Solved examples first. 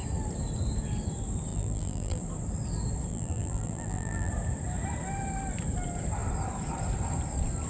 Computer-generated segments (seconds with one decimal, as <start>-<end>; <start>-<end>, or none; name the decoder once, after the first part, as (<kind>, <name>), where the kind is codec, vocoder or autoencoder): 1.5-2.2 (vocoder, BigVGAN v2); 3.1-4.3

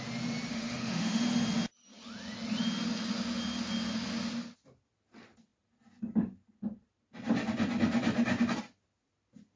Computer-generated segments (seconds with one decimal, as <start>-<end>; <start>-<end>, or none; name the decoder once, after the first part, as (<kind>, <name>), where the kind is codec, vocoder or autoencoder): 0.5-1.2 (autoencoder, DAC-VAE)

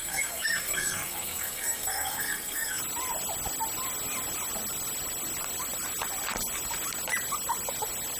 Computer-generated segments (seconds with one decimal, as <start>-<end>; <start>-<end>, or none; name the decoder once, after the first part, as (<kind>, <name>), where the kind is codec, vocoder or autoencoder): 0.0-2.8 (codec, SNAC)

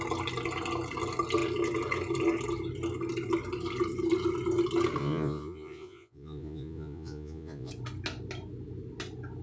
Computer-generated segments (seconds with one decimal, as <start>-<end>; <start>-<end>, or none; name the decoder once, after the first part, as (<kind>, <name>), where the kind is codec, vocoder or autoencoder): 5.0-7.7 (vocoder, Vocos)

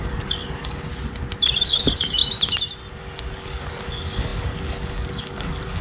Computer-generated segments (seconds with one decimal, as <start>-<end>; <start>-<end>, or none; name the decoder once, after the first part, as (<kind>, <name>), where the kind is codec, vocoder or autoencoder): 0.0-0.9 (codec, DAC); 1.6-2.2; 2.9-5.8